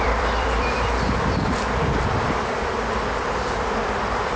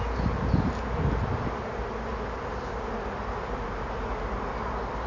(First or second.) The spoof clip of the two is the first